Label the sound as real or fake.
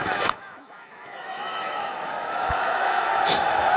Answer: fake